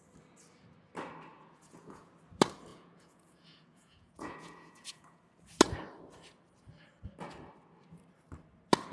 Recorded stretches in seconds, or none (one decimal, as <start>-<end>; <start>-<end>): 0.0-1.3; 2.1-2.7; 5.2-8.9